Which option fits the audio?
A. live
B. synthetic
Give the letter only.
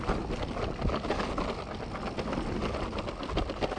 A